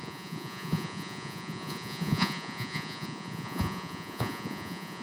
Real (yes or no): no